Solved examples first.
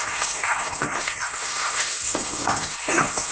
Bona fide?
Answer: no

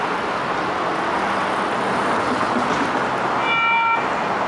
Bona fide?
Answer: yes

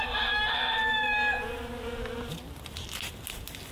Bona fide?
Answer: yes